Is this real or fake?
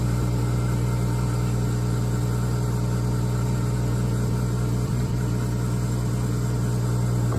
real